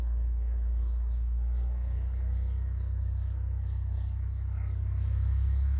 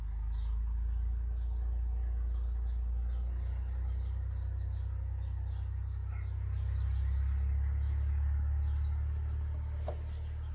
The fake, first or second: first